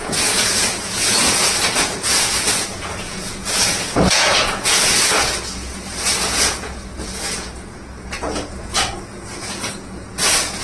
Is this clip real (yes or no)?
no